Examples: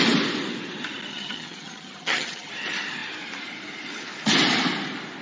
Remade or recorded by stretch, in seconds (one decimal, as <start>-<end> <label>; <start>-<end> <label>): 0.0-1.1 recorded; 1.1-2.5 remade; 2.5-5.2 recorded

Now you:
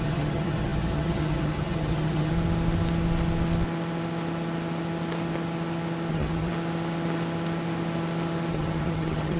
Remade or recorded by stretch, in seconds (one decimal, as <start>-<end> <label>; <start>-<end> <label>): 0.0-2.3 remade; 2.3-6.1 recorded; 6.1-6.5 remade; 6.5-8.5 recorded; 8.5-9.4 remade

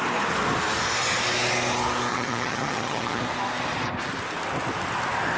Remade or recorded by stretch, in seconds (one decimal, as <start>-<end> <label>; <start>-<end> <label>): 0.0-2.1 recorded; 2.1-3.2 remade; 3.2-5.4 recorded

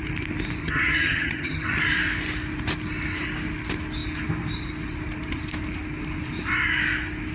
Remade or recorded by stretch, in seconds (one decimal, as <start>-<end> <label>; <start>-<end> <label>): 0.0-0.6 recorded; 0.6-1.8 remade; 1.8-7.3 recorded